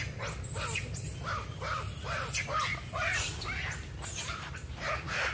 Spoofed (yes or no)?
no